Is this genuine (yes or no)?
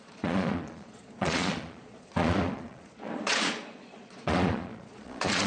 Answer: no